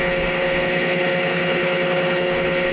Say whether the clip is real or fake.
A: fake